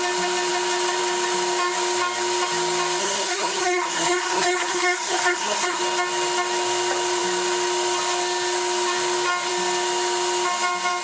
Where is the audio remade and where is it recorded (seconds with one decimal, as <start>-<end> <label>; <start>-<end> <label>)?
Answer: 0.0-3.0 recorded; 3.0-5.8 remade; 5.8-11.0 recorded